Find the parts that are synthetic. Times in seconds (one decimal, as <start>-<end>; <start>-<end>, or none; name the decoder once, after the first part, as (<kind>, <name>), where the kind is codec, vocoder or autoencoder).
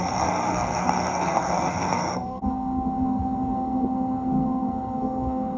0.0-5.6 (codec, SNAC)